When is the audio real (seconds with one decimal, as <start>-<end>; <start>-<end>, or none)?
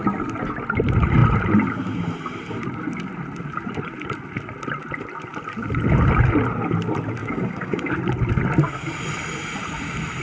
0.0-7.2; 7.9-10.2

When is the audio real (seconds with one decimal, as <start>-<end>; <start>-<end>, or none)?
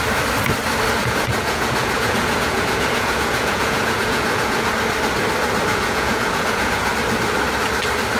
0.0-1.0; 4.7-5.7; 6.9-8.2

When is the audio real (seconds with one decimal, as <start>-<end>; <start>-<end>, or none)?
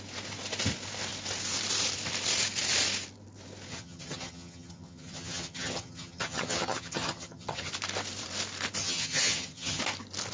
0.0-3.7; 7.7-8.8; 9.8-10.3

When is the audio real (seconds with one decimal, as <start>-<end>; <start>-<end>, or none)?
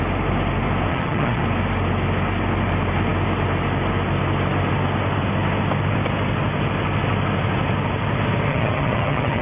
0.0-0.9; 1.4-8.5